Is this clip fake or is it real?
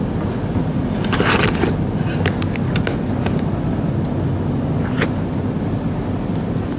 real